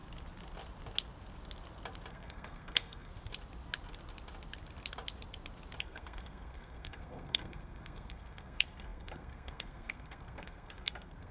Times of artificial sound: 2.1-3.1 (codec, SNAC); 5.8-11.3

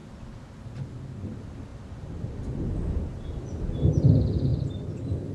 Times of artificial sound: none

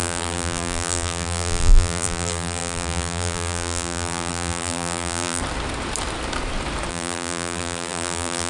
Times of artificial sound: 0.0-5.4 (vocoder, BigVGAN v2); 6.9-8.5

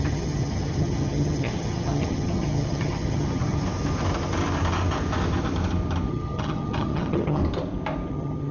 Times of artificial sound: 0.0-3.6 (vocoder, HiFi-GAN); 6.1-7.4; 8.1-8.5

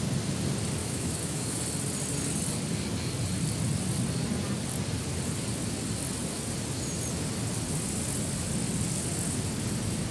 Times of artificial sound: 0.8-1.6 (autoencoder, DAC-VAE)

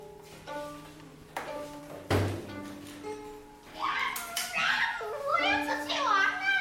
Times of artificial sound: 1.1-1.8 (vocoder, BigVGAN v2); 5.3-6.6

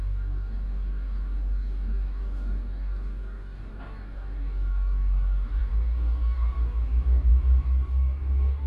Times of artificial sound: 0.0-8.7 (codec, DAC)

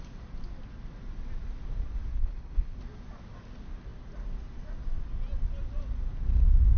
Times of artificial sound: 2.1-2.8 (codec, HILCodec)